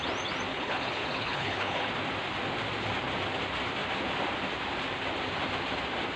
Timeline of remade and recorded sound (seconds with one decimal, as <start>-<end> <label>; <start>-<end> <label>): 0.0-0.5 recorded; 0.5-1.9 remade; 1.9-6.2 recorded